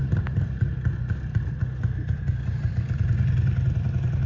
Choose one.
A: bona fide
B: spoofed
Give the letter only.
A